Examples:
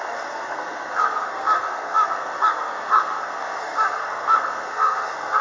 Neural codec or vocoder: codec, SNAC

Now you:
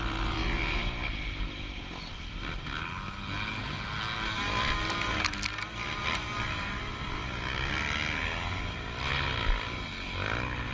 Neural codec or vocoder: none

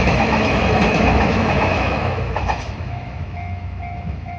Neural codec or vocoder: autoencoder, DAC-VAE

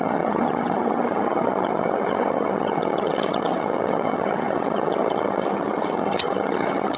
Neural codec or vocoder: vocoder, HiFi-GAN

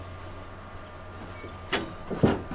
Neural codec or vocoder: none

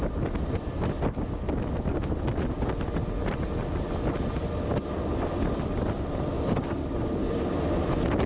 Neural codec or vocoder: none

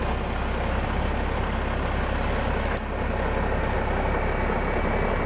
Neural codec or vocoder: none